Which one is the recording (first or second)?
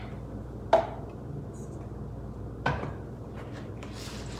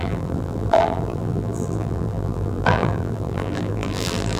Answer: first